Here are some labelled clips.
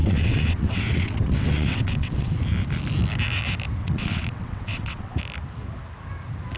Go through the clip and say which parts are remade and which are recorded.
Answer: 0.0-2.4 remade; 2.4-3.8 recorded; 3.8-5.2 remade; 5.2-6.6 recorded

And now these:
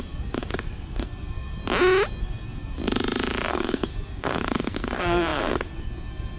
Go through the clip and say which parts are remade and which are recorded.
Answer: 0.0-1.6 remade; 1.6-2.2 recorded; 2.2-2.8 remade; 2.8-3.5 recorded; 3.5-6.4 remade

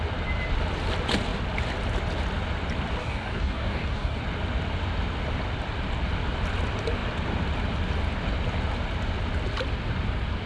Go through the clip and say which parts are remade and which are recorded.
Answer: 0.0-3.0 recorded; 3.0-4.2 remade; 4.2-10.5 recorded

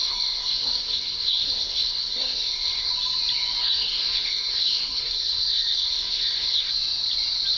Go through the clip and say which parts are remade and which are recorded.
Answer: 0.0-2.9 remade; 2.9-3.6 recorded; 3.6-6.7 remade; 6.7-7.6 recorded

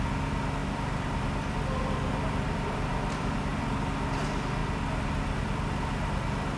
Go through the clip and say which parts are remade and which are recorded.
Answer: 0.0-0.6 recorded; 0.6-3.6 remade; 3.6-4.6 recorded; 4.6-5.8 remade; 5.8-6.6 recorded